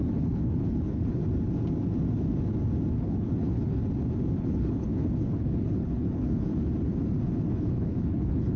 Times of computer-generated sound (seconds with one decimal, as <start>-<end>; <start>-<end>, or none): 0.0-1.2; 2.9-3.8; 4.4-6.5; 7.4-8.6